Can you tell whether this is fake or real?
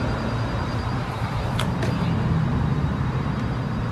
real